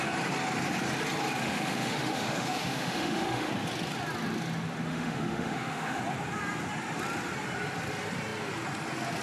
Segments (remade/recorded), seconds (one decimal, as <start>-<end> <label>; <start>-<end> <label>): 0.0-1.4 recorded; 1.4-3.5 remade; 3.5-4.9 recorded; 4.9-6.0 remade; 6.0-9.2 recorded